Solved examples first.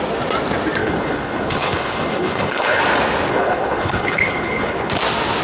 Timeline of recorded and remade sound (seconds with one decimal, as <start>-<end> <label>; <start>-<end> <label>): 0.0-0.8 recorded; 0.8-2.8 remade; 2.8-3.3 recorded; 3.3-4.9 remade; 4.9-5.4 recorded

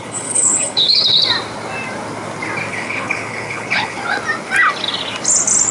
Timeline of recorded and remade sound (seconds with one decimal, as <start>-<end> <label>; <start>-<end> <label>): 0.0-1.2 remade; 1.2-2.7 recorded; 2.7-4.0 remade; 4.0-5.7 recorded

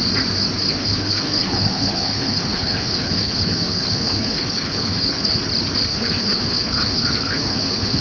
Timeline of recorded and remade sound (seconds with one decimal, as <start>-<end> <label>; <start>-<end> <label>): 0.0-0.7 recorded; 0.7-5.4 remade; 5.4-5.9 recorded; 5.9-8.0 remade

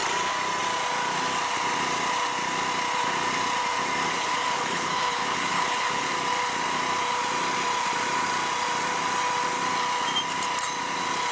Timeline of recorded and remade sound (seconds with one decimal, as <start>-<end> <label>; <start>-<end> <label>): 0.0-4.1 recorded; 4.1-6.1 remade; 6.1-11.3 recorded

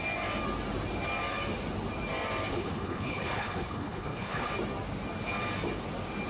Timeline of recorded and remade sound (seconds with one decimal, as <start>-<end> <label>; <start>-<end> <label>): 0.0-2.5 recorded; 2.5-4.5 remade; 4.5-6.3 recorded

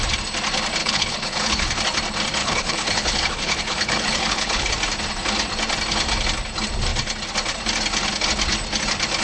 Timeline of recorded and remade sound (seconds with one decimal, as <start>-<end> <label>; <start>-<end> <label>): 0.0-0.8 recorded; 0.8-1.7 remade; 1.7-2.4 recorded; 2.4-4.7 remade; 4.7-9.2 recorded

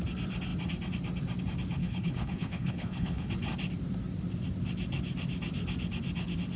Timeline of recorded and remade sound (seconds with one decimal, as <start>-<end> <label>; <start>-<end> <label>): 0.0-1.8 recorded; 1.8-3.3 remade; 3.3-6.6 recorded

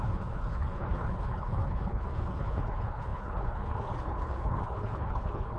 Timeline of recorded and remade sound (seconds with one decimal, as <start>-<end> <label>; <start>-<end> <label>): 0.0-5.6 remade